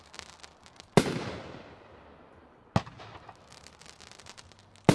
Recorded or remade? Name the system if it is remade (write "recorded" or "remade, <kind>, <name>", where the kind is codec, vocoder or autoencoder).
recorded